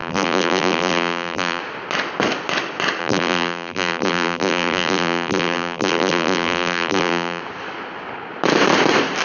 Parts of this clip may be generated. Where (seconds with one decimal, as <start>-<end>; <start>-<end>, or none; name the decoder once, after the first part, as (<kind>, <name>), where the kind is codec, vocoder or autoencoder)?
0.0-1.6 (vocoder, BigVGAN v2); 3.0-7.4